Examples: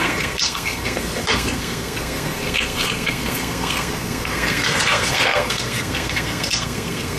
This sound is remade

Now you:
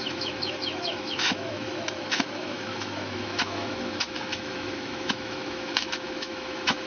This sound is remade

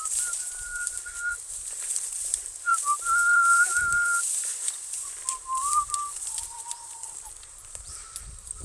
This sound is remade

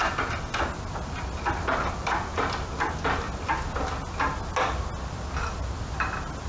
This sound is recorded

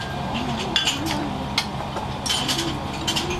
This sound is recorded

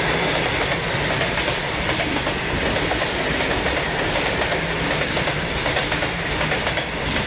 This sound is recorded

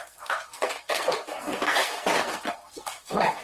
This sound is remade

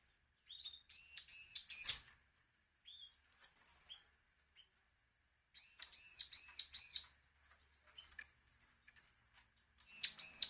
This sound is recorded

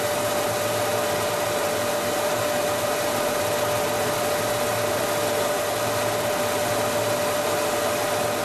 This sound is recorded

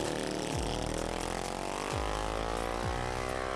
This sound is recorded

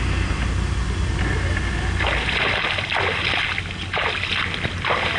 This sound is recorded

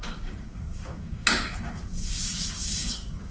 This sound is remade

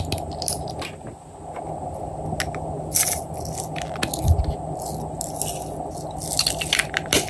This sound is recorded